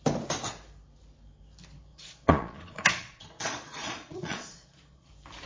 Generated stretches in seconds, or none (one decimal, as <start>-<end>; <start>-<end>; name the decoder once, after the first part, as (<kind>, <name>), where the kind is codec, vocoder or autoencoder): 1.9-5.1 (vocoder, Vocos)